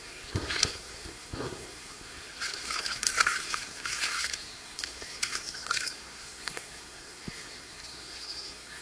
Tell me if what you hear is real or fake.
fake